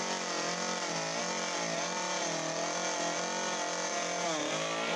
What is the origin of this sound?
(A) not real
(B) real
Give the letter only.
B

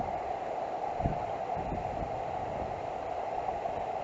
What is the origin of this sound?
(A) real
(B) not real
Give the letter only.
A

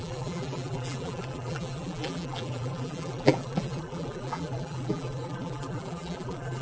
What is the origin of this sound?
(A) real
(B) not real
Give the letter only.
B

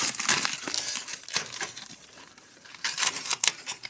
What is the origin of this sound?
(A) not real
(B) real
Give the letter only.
A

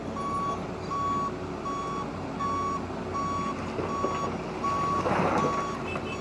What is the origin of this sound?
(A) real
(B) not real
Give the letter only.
A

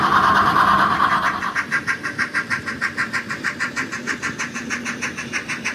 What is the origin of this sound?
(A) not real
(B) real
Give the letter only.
A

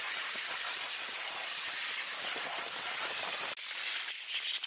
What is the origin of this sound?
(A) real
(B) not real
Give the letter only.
A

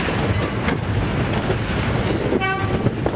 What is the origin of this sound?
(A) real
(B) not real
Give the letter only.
A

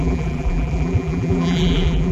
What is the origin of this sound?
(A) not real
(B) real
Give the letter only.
A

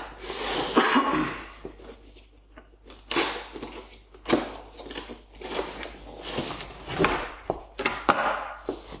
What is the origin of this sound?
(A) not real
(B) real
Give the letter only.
B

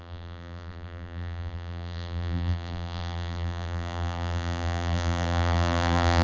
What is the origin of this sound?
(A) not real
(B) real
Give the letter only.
A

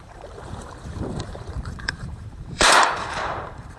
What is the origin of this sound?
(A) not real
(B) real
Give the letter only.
A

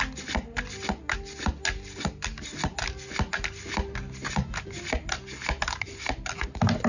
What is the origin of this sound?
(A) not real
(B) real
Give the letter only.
B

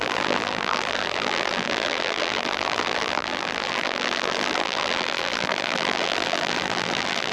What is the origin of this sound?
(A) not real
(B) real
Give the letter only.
A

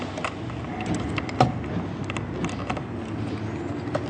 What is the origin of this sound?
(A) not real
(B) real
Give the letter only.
B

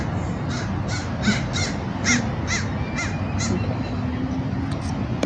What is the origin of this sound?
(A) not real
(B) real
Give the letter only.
B